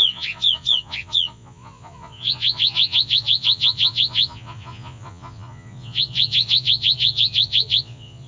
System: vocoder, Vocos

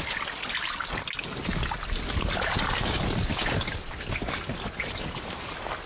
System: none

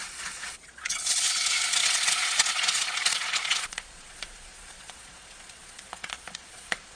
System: vocoder, Vocos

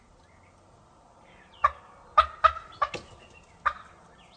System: none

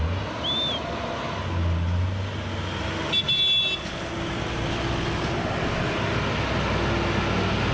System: none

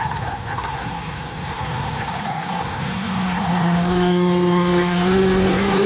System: codec, SNAC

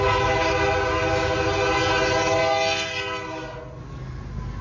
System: none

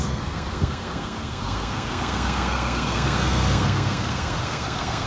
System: codec, SNAC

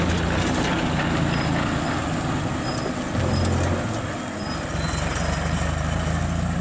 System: none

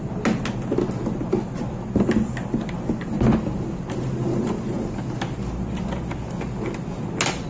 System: none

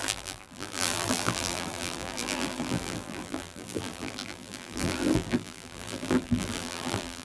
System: vocoder, BigVGAN v2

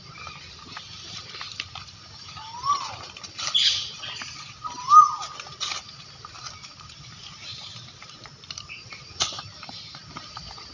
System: vocoder, BigVGAN v2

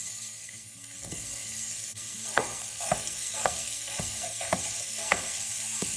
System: codec, SNAC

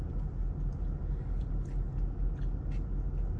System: none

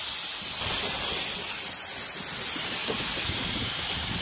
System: none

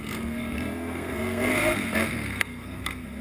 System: codec, SNAC